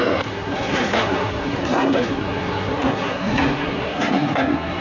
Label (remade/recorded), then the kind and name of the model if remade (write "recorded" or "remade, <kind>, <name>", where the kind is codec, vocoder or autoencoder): remade, codec, SNAC